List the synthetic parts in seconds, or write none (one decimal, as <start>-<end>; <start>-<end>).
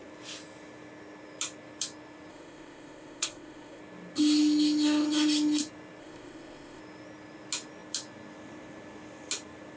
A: 2.3-3.8; 6.0-6.8